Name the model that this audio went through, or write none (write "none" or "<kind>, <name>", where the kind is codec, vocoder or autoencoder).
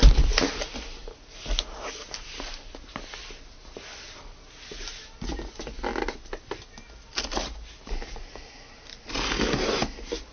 none